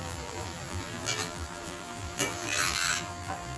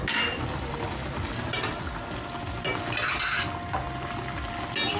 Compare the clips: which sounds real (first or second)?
second